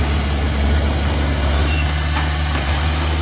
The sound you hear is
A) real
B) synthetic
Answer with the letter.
A